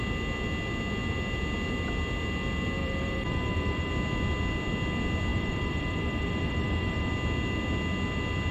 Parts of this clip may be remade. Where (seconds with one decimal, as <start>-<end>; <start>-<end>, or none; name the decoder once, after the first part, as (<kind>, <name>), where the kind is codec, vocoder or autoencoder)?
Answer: 2.8-3.9 (vocoder, BigVGAN v2); 5.3-7.1